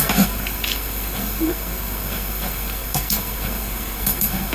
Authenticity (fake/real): fake